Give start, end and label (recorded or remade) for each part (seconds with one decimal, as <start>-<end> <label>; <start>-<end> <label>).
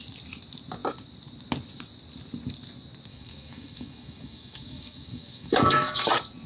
0.0-3.1 recorded; 3.1-6.1 remade; 6.1-6.5 recorded